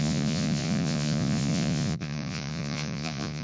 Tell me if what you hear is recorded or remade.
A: remade